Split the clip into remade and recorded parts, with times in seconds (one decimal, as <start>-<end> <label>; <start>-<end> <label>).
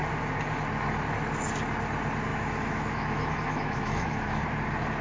0.0-2.3 recorded; 2.3-4.4 remade; 4.4-5.0 recorded